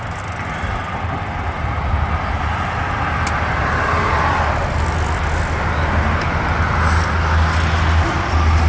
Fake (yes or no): no